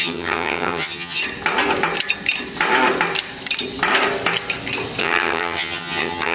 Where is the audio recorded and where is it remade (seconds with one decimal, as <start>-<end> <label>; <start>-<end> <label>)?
0.0-1.2 remade; 1.2-5.0 recorded; 5.0-6.3 remade